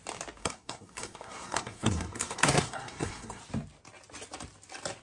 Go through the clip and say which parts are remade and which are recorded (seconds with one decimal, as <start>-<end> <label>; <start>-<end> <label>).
0.0-0.4 recorded; 0.4-3.4 remade; 3.4-5.0 recorded